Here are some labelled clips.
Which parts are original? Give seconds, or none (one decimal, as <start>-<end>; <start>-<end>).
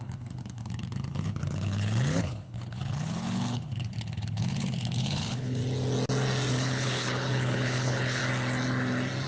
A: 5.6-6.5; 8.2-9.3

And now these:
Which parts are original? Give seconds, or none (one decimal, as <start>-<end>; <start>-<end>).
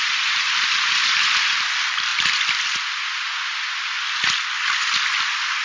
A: 0.0-5.6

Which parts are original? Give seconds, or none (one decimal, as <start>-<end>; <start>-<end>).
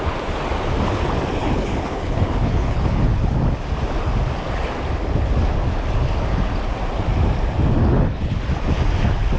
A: 0.0-1.4; 3.3-7.8; 8.4-9.4